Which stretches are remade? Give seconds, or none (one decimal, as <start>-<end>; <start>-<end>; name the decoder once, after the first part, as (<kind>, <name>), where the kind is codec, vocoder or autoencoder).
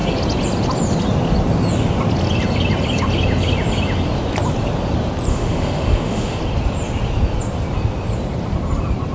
5.3-6.4 (autoencoder, DAC-VAE)